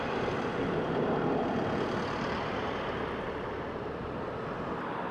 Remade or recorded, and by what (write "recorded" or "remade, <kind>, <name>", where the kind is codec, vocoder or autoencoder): remade, vocoder, BigVGAN v2